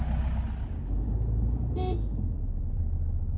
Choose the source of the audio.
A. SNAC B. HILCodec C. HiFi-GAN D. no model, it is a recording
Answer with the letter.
D